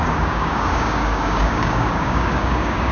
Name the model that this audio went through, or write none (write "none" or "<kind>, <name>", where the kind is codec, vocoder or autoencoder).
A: codec, DAC